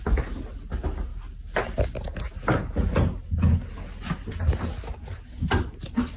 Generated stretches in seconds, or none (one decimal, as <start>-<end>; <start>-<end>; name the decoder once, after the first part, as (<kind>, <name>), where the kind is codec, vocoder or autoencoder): none